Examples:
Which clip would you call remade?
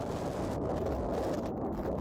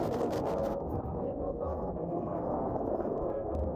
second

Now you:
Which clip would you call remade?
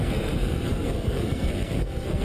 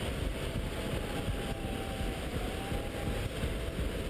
first